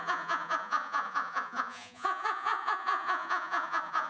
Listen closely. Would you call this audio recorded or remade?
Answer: remade